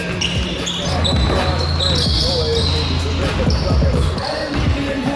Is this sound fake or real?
real